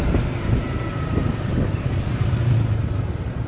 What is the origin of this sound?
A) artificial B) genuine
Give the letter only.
B